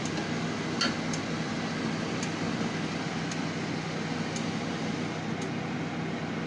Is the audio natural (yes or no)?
yes